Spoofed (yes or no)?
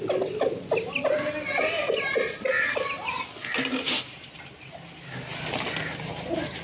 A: no